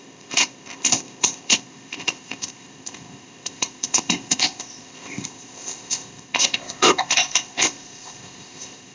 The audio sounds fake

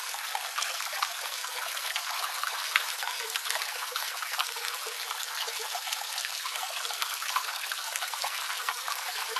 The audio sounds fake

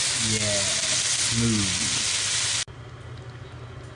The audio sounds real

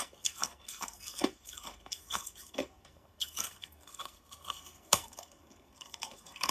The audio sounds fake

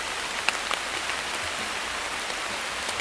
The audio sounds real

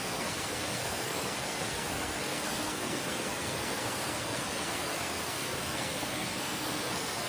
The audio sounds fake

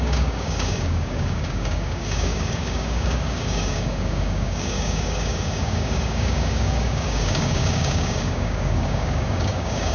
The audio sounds fake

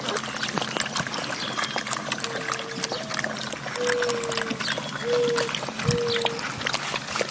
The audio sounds real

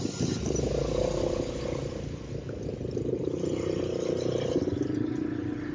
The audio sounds real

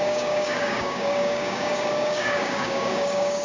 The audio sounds fake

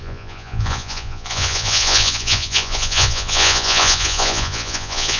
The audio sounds fake